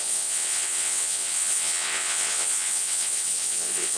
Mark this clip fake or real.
fake